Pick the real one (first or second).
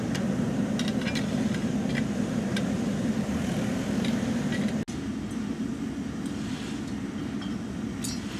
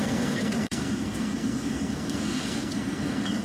first